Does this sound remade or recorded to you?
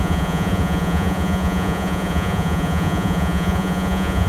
remade